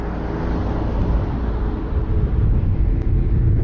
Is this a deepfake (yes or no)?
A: no